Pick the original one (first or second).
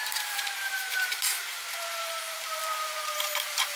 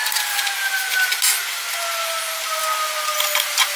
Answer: second